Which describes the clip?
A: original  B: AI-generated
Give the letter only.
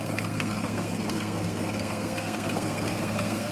B